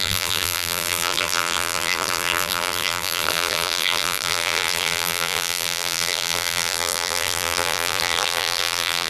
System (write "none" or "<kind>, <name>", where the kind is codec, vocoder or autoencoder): vocoder, BigVGAN v2